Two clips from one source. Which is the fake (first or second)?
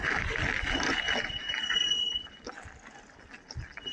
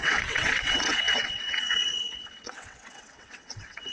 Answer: second